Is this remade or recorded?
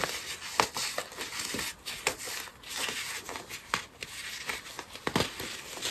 recorded